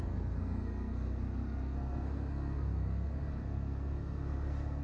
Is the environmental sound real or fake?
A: fake